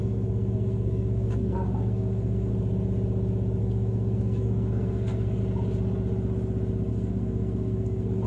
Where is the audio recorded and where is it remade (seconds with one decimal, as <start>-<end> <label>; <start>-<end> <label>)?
0.0-2.5 remade; 2.5-3.6 recorded; 3.6-5.4 remade; 5.4-6.9 recorded; 6.9-8.3 remade